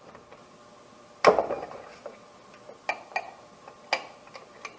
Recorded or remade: recorded